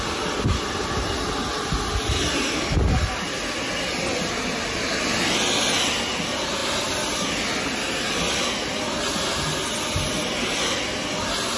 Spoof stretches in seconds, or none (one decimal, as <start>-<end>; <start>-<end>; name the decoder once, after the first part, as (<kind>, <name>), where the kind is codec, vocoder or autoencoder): none